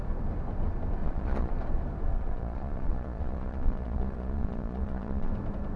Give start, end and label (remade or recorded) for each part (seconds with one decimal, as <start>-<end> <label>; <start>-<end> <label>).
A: 0.0-1.0 recorded; 1.0-1.5 remade; 1.5-2.1 recorded; 2.1-5.3 remade; 5.3-5.8 recorded